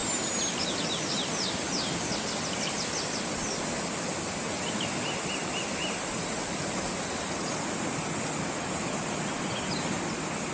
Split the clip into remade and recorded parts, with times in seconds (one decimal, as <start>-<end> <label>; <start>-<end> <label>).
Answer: 0.0-10.5 recorded